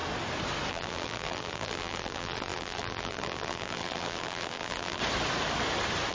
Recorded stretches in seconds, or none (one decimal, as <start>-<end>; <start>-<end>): 0.0-0.7; 5.0-6.1